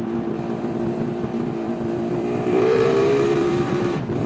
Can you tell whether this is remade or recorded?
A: remade